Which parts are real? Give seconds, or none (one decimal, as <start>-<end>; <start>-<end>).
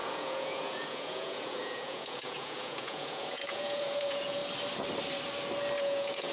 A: 4.4-5.8